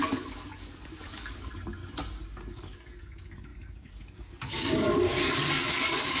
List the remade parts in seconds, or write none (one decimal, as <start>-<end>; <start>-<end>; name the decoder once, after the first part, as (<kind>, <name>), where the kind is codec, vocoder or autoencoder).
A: 0.0-1.8 (codec, DAC); 2.5-6.2